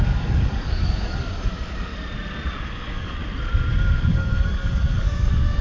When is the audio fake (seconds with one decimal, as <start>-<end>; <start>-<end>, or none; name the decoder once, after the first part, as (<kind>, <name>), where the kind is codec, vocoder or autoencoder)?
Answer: 0.0-1.9 (codec, DAC); 2.6-3.2; 3.9-5.6